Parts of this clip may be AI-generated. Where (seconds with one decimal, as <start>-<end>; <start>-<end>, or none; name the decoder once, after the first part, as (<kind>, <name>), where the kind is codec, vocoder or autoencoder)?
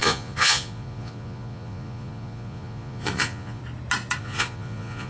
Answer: 0.0-3.6 (vocoder, Vocos); 4.2-5.1